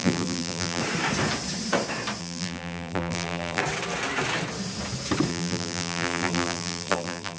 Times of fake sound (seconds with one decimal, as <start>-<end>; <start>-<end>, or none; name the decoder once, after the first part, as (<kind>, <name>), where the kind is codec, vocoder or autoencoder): 0.0-0.8 (vocoder, BigVGAN v2); 2.2-3.6; 5.3-7.4